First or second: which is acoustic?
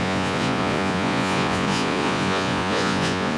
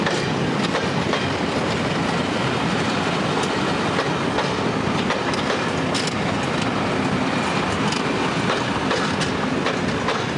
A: second